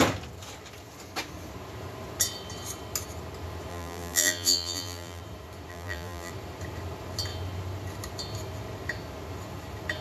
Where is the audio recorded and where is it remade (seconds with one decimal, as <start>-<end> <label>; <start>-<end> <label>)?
0.0-3.7 recorded; 3.7-5.2 remade; 5.2-5.7 recorded; 5.7-6.3 remade; 6.3-10.0 recorded